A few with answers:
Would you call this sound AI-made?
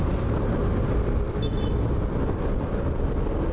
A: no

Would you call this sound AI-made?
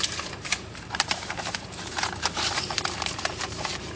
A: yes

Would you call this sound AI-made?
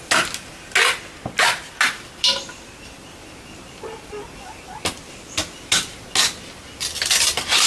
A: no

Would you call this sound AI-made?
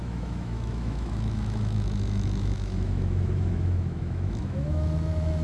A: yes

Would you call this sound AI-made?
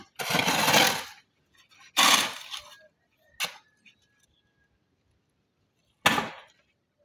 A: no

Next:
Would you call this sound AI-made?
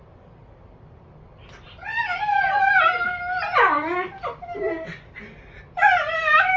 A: no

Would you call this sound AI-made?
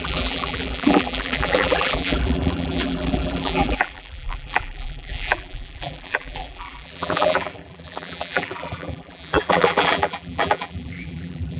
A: yes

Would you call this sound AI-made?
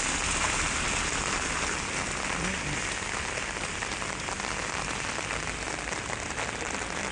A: no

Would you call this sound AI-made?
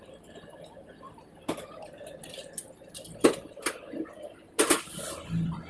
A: no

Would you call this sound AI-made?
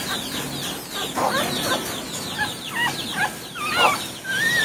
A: no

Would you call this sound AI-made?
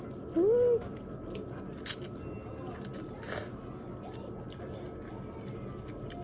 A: no